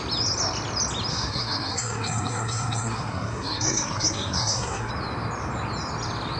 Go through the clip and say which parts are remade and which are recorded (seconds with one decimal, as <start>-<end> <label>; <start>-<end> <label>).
0.0-1.1 recorded; 1.1-4.9 remade; 4.9-6.4 recorded